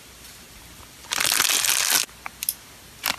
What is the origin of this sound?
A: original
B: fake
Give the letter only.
A